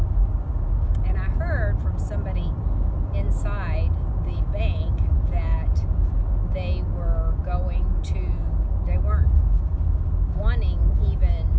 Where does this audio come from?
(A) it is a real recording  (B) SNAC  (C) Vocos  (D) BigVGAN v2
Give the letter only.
A